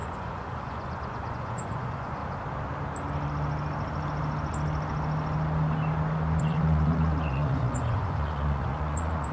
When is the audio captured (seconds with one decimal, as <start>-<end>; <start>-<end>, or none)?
2.2-6.4